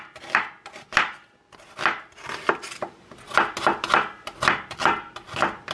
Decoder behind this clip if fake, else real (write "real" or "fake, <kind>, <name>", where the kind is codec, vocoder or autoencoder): real